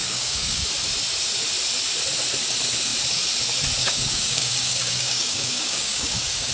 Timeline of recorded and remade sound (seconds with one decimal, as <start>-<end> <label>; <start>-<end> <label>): 0.0-0.6 remade; 0.6-3.8 recorded; 3.8-6.5 remade